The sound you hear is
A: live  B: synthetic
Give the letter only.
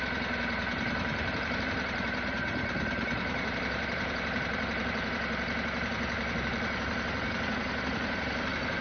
B